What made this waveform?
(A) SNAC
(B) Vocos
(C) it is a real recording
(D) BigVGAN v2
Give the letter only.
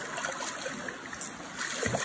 C